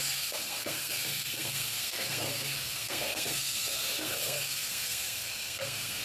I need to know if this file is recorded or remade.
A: remade